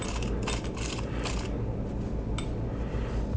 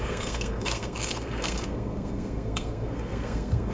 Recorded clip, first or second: first